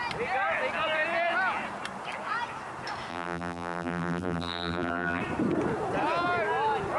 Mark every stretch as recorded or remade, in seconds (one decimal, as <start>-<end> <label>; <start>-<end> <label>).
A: 0.0-3.1 recorded; 3.1-5.2 remade; 5.2-7.0 recorded